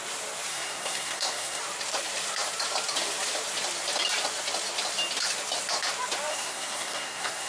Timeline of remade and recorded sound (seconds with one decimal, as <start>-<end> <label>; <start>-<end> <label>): 0.0-0.5 recorded; 0.5-1.6 remade; 1.6-6.3 recorded; 6.3-7.5 remade